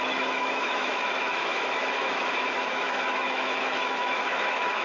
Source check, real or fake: fake